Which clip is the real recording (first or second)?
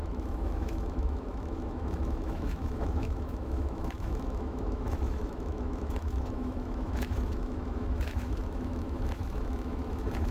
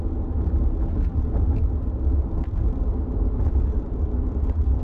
second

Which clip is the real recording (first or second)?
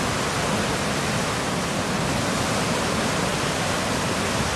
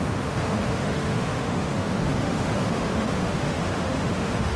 first